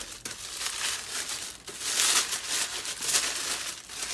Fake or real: real